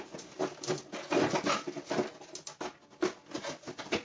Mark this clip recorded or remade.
recorded